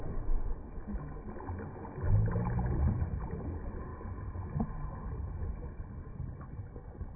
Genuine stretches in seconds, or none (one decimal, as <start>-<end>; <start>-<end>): 0.0-7.2